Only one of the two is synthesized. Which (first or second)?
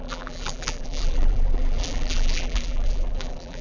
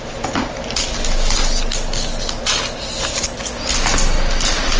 first